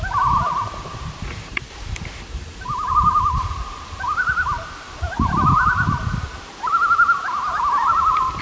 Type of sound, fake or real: fake